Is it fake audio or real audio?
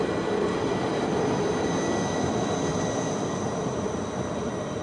real